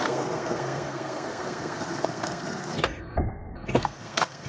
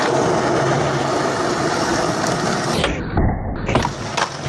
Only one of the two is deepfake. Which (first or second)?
first